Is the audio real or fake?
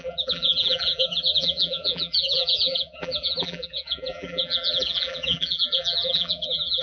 fake